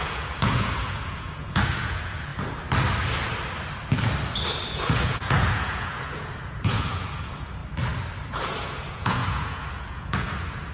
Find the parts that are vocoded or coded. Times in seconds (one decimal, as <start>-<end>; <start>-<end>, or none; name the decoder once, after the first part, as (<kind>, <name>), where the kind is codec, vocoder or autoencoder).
0.0-2.3 (vocoder, Vocos); 4.7-7.6; 8.3-10.7